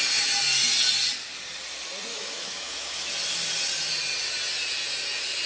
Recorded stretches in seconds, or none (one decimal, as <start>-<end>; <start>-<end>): 0.0-2.1; 3.1-5.5